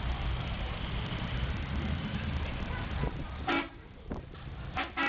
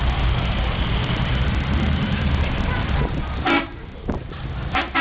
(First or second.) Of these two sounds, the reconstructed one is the first